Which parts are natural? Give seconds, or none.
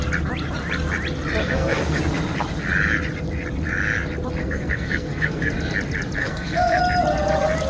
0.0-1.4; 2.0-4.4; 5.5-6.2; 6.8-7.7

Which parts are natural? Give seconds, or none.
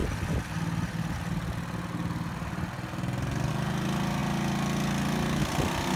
0.0-6.0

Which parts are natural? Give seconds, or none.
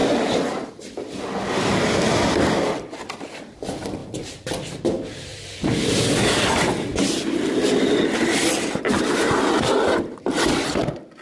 0.0-11.2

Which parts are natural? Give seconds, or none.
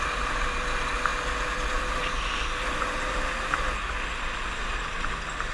0.0-5.5